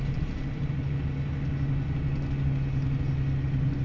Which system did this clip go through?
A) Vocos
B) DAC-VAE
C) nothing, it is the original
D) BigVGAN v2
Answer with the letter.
C